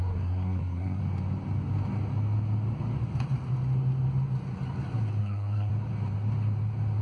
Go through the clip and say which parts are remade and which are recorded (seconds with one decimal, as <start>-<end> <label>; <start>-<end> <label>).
0.0-1.0 remade; 1.0-5.2 recorded; 5.2-5.7 remade; 5.7-7.0 recorded